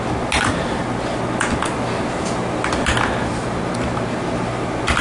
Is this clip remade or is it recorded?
recorded